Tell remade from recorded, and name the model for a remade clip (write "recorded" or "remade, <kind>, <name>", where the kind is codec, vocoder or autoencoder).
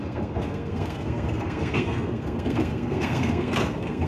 remade, codec, SNAC